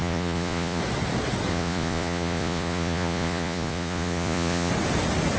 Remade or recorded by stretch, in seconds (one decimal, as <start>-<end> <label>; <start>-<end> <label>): 0.0-0.8 remade; 0.8-1.5 recorded; 1.5-4.7 remade; 4.7-5.4 recorded